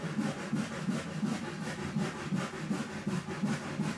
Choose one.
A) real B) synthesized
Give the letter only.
A